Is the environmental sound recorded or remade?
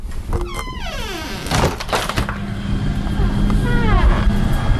recorded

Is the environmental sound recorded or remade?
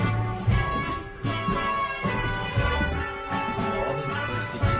remade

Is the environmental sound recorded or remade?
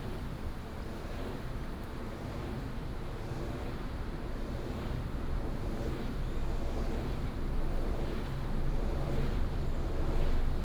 remade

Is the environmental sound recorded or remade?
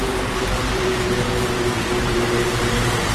remade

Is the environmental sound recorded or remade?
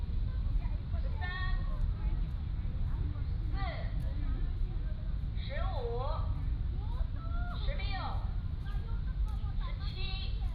recorded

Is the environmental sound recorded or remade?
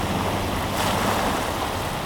recorded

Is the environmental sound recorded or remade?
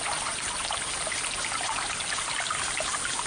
recorded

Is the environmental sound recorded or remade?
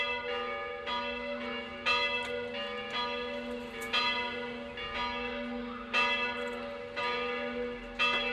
recorded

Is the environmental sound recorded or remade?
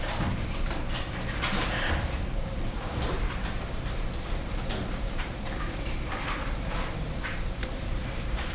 remade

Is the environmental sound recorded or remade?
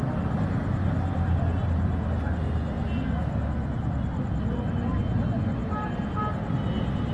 recorded